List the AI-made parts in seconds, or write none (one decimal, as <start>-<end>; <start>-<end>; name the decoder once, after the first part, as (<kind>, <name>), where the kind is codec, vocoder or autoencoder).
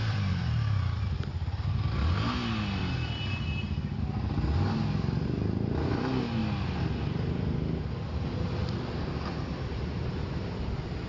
0.0-1.0 (vocoder, BigVGAN v2)